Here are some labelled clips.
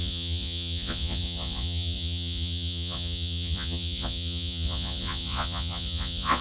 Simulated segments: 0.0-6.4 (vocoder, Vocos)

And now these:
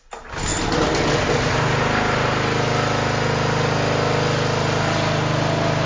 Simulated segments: none